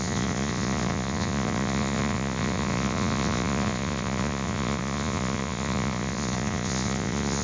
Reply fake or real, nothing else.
fake